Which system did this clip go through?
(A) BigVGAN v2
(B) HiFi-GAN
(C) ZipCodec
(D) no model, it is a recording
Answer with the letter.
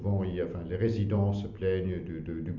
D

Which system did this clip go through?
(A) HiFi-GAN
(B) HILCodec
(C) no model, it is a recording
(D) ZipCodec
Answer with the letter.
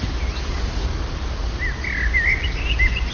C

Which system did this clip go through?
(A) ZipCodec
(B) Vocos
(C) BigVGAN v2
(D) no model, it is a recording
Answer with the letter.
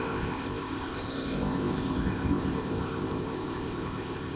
A